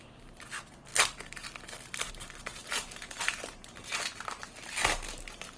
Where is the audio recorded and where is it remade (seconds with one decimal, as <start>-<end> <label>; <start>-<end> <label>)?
0.0-5.6 recorded

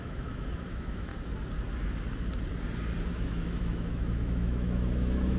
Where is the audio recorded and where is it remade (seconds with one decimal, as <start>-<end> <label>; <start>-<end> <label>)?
0.0-1.1 remade; 1.1-3.1 recorded; 3.1-5.4 remade